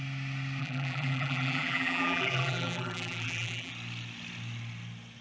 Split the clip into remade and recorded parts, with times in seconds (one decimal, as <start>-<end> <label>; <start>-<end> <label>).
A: 0.0-0.6 recorded; 0.6-3.7 remade; 3.7-5.2 recorded